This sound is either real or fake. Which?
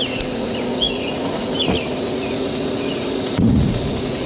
fake